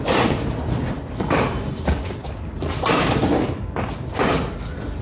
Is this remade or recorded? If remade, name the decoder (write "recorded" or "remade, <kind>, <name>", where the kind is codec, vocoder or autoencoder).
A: recorded